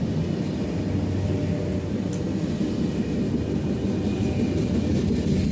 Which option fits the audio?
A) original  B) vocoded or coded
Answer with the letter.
A